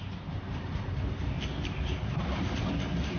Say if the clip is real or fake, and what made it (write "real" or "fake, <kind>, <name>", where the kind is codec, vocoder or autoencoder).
real